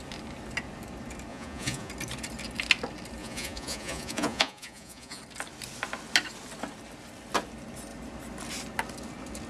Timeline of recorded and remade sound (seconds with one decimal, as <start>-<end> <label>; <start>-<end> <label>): 0.0-1.3 recorded; 1.3-1.9 remade; 1.9-3.2 recorded; 3.2-5.2 remade; 5.2-9.5 recorded